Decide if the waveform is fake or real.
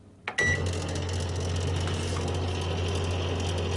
real